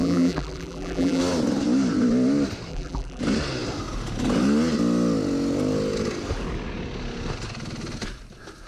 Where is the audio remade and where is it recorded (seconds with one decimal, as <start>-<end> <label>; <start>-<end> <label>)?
0.0-1.2 remade; 1.2-2.7 recorded; 2.7-3.2 remade; 3.2-8.7 recorded